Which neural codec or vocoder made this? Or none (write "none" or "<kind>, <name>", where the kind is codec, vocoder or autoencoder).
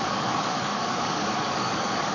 codec, DAC